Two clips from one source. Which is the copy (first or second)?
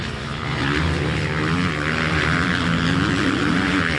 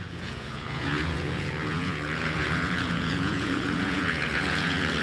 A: second